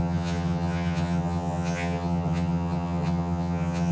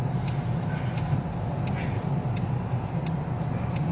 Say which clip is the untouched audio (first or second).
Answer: second